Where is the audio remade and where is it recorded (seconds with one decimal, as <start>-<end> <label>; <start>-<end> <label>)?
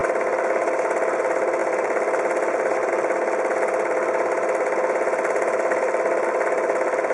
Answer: 0.0-7.1 recorded